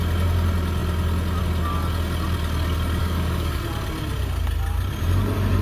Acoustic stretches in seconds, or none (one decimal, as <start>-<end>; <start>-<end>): 0.0-3.0; 3.6-5.6